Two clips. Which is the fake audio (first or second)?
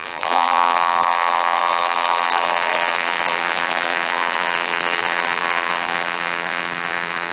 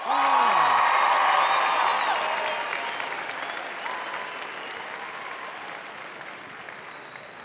first